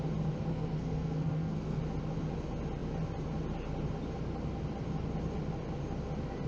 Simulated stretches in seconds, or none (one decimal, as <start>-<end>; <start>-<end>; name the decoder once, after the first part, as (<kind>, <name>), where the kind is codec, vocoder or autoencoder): 0.5-1.8 (codec, SNAC)